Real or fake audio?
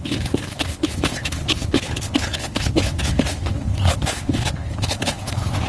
fake